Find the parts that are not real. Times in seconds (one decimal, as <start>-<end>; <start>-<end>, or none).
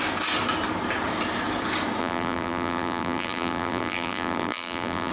2.0-5.1